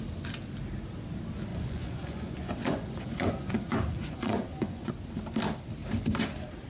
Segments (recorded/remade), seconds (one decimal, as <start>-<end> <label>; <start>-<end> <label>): 0.0-1.5 recorded; 1.5-4.9 remade; 4.9-6.7 recorded